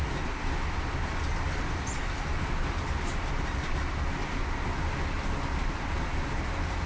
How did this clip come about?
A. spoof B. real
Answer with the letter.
B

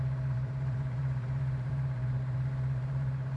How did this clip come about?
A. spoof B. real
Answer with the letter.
A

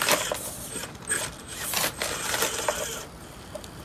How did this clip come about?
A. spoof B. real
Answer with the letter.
A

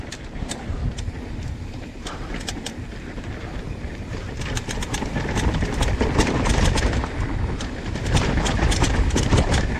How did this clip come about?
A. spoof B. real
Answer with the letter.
A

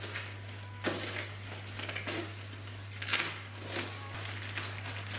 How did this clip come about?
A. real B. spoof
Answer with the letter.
A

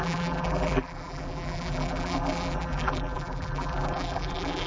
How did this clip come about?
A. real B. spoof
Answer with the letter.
B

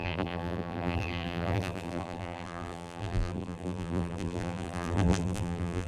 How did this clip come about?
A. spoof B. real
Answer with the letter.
A